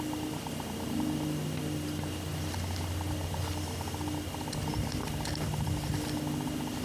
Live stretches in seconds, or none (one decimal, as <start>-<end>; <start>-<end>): 0.0-6.8